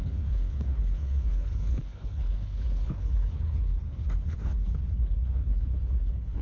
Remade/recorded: remade